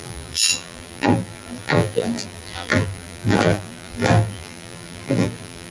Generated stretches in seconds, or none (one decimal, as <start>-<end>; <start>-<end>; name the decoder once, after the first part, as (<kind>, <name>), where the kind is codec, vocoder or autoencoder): 0.0-5.7 (vocoder, BigVGAN v2)